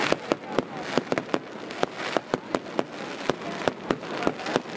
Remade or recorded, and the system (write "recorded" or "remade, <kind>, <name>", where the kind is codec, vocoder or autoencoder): recorded